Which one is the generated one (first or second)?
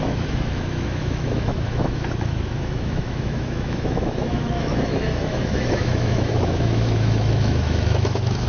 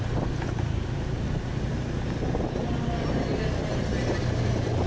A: first